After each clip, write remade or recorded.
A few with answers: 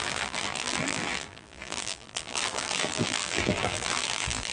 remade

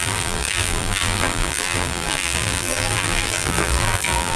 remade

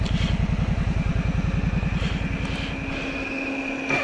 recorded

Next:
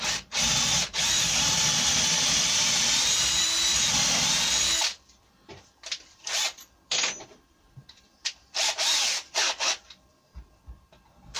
remade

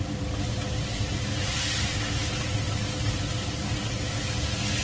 recorded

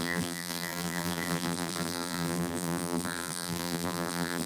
remade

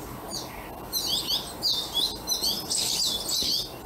recorded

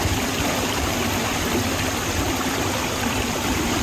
remade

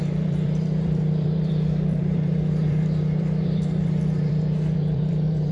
remade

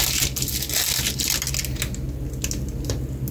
recorded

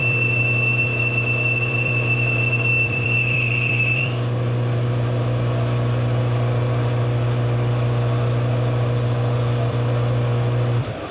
remade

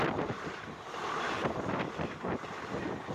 remade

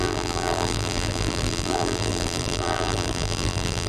remade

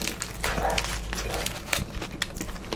recorded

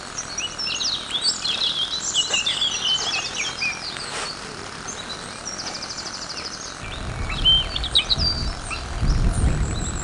recorded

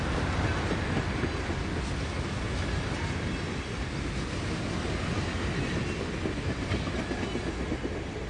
recorded